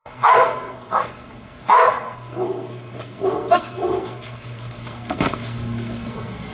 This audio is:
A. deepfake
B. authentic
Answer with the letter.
A